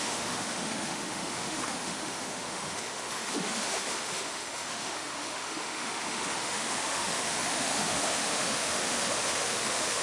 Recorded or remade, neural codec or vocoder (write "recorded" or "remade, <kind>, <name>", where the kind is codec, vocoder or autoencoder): remade, autoencoder, DAC-VAE